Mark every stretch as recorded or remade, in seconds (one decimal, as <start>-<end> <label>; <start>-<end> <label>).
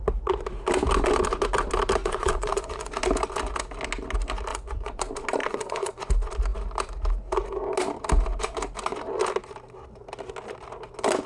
0.0-2.0 recorded; 2.0-3.0 remade; 3.0-4.5 recorded; 4.5-5.0 remade; 5.0-5.4 recorded; 5.4-6.1 remade; 6.1-11.3 recorded